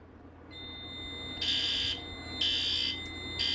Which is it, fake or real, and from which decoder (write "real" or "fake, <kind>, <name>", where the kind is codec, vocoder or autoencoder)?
real